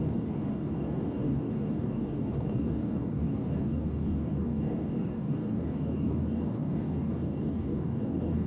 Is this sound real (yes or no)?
no